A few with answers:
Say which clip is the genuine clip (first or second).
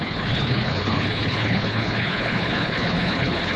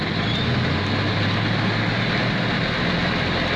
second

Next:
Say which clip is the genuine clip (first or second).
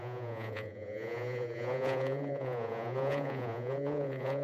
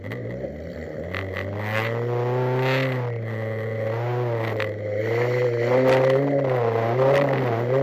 second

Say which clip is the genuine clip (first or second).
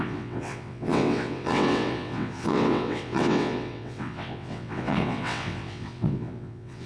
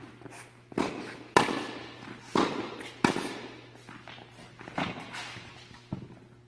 second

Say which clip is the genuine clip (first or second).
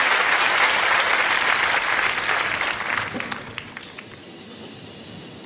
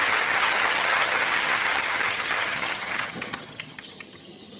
first